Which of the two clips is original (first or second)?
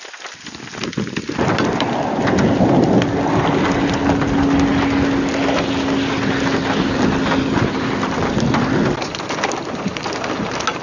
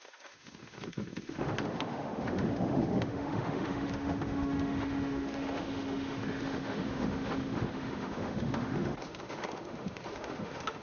first